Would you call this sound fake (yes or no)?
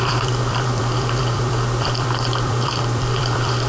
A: yes